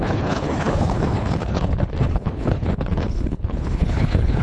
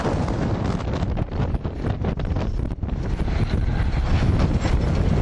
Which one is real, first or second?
second